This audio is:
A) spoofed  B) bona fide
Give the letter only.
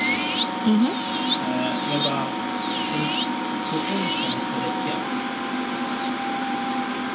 B